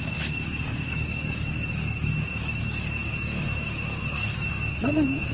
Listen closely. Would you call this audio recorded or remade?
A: remade